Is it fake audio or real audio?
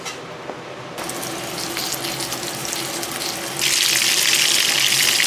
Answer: real